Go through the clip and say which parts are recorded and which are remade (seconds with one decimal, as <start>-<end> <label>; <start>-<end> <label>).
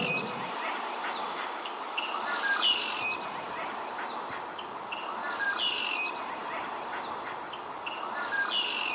0.0-1.2 recorded; 1.2-1.7 remade; 1.7-8.9 recorded